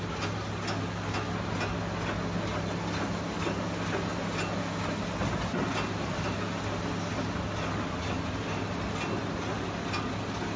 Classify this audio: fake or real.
real